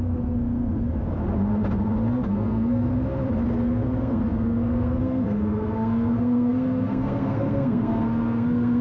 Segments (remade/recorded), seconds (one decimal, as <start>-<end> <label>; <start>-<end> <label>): 0.0-1.1 remade; 1.1-2.1 recorded; 2.1-2.9 remade; 2.9-3.5 recorded; 3.5-8.8 remade